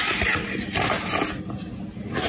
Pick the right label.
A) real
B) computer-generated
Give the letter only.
A